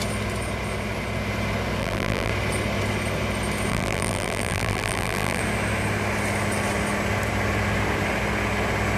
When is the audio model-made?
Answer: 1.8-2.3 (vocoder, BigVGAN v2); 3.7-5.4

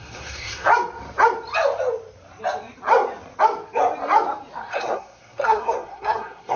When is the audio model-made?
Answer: 0.0-0.7 (codec, SNAC); 4.7-6.6

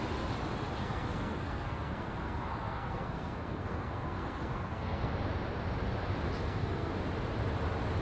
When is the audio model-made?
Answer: 0.8-5.1 (codec, SNAC); 6.4-6.9

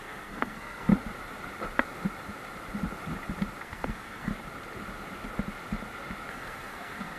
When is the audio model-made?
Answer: 0.0-0.9 (codec, SNAC); 3.6-4.3; 6.3-7.2

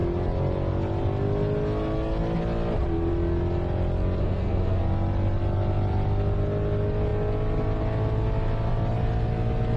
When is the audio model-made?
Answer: 4.2-4.8 (codec, SNAC)

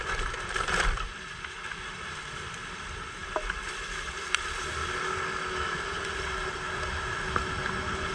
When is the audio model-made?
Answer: none